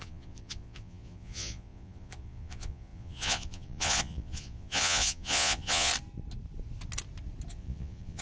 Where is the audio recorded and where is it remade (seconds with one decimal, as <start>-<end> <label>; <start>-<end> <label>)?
0.0-5.9 remade; 5.9-7.5 recorded; 7.5-8.2 remade